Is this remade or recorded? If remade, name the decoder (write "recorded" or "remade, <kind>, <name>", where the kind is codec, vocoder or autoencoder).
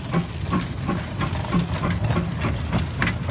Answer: recorded